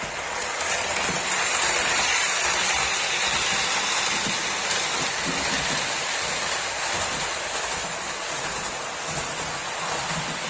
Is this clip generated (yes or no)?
no